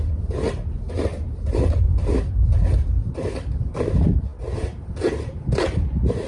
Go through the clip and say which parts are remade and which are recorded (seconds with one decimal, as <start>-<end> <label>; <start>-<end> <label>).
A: 0.0-6.3 recorded